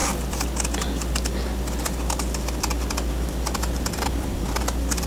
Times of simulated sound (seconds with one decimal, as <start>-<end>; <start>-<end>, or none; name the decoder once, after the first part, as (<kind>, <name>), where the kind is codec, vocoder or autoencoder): none